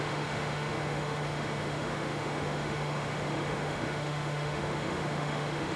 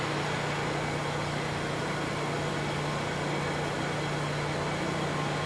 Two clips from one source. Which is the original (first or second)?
second